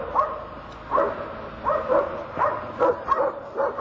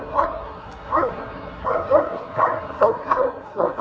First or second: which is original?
first